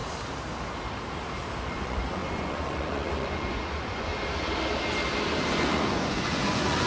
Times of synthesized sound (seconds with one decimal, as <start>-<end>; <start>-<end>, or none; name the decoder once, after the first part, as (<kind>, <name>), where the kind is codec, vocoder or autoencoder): 1.7-4.1 (vocoder, Vocos); 5.5-6.9